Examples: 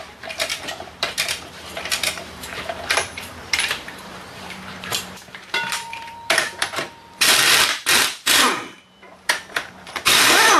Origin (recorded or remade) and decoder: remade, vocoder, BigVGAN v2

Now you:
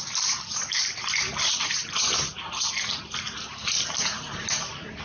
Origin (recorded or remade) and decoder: remade, vocoder, BigVGAN v2